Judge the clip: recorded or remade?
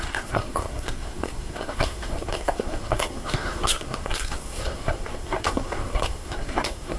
remade